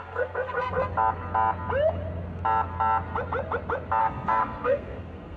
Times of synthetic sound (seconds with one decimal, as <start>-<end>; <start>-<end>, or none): 0.0-0.8; 4.0-5.4